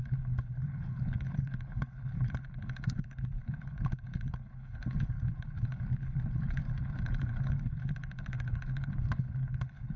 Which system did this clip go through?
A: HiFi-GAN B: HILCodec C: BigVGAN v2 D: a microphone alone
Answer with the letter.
B